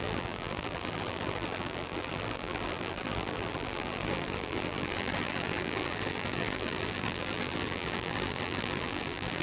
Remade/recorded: remade